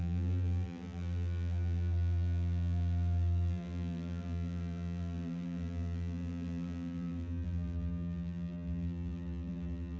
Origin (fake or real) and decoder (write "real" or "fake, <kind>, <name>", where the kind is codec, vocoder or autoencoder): fake, vocoder, BigVGAN v2